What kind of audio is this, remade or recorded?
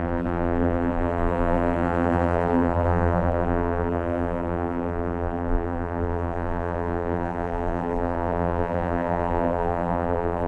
remade